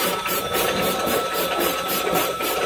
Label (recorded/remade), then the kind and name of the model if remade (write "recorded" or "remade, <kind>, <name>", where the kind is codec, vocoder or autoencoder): remade, vocoder, BigVGAN v2